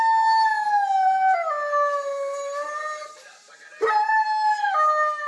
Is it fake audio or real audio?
real